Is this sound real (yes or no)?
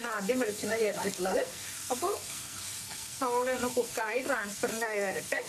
no